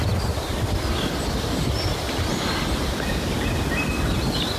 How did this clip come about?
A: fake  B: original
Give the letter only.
B